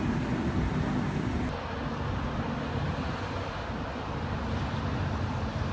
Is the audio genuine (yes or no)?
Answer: yes